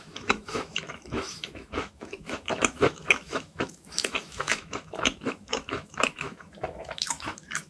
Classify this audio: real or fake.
fake